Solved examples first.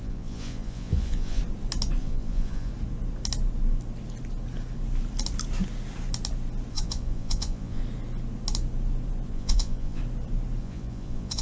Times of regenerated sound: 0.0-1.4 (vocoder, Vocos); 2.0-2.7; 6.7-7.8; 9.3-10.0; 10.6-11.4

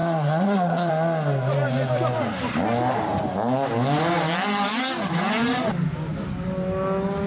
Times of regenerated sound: 0.0-0.9 (vocoder, Vocos)

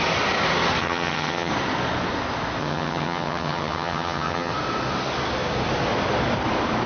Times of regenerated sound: 0.8-1.5 (vocoder, HiFi-GAN); 2.6-4.5

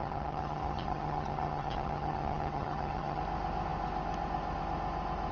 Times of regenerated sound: 0.0-3.2 (vocoder, HiFi-GAN)